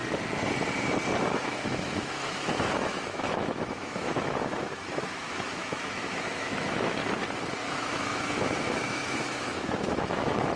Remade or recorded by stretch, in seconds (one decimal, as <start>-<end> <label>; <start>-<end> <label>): 0.0-1.2 recorded; 1.2-7.0 remade; 7.0-7.6 recorded; 7.6-10.6 remade